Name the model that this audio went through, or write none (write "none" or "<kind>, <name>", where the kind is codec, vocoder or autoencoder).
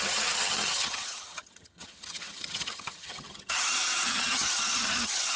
vocoder, HiFi-GAN